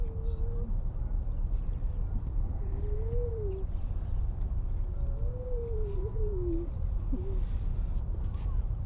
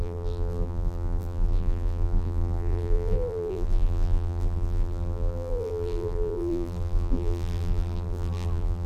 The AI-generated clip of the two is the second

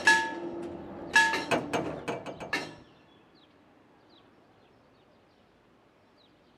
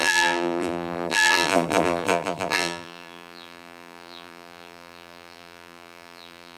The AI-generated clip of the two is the second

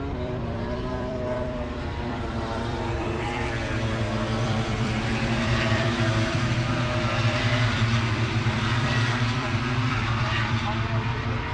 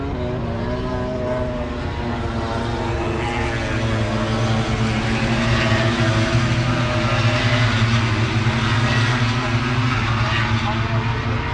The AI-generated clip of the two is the first